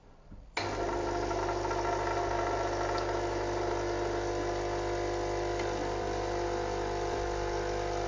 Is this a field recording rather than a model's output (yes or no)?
yes